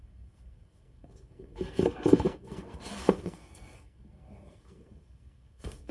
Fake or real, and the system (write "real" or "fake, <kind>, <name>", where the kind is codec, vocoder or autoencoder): fake, codec, SNAC